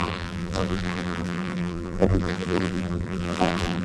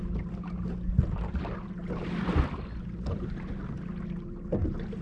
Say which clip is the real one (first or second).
second